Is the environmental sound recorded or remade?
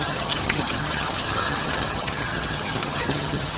remade